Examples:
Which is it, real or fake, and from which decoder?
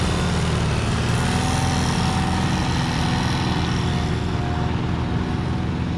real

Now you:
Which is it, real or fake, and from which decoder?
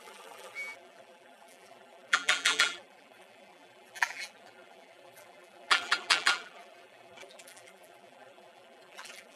fake, vocoder, BigVGAN v2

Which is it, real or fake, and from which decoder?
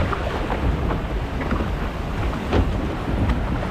real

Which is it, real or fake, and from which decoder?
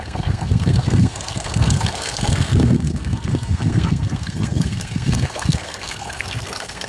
fake, codec, SNAC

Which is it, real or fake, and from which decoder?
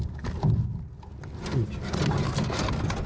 real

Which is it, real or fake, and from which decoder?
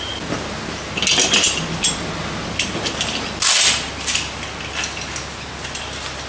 real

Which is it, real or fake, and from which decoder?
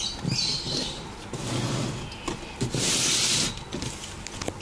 real